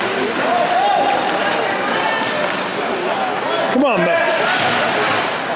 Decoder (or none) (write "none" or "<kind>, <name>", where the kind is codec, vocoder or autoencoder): none